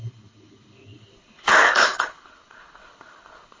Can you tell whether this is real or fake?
fake